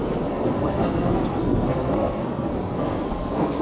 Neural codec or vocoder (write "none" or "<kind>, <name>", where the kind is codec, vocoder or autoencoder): codec, SNAC